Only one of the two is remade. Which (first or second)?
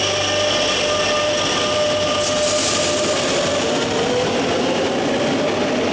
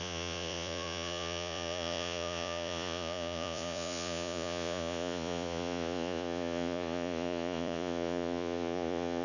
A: second